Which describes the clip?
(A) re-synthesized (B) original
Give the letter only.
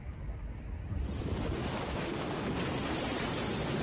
B